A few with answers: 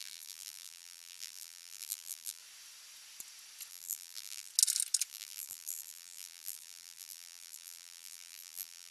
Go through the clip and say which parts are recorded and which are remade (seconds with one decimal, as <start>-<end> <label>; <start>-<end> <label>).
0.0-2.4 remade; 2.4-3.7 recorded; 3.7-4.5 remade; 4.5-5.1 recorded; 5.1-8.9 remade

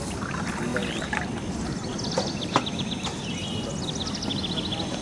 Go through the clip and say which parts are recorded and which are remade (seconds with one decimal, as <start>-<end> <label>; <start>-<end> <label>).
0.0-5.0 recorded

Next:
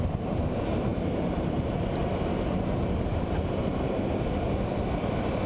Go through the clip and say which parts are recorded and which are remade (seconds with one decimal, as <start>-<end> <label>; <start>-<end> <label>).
0.0-5.5 recorded